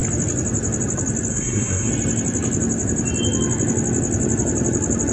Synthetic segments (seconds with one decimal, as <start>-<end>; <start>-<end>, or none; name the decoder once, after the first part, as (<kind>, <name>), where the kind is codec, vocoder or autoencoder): 1.3-1.9 (codec, SNAC)